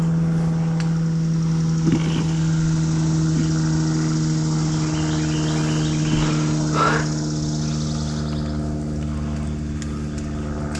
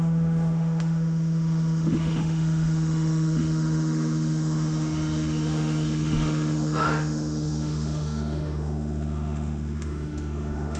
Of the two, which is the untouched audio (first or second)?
first